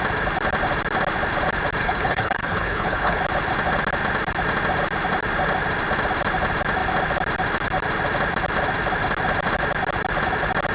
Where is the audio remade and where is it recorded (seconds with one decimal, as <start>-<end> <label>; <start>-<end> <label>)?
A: 0.0-1.8 recorded; 1.8-3.2 remade; 3.2-10.7 recorded